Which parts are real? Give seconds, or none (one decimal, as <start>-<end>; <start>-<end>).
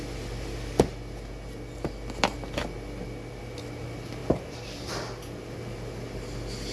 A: 0.0-4.2; 4.8-6.7